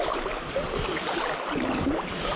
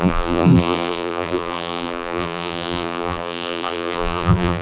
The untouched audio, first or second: first